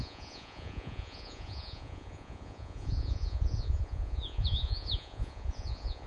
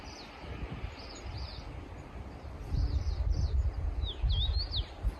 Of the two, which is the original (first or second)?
second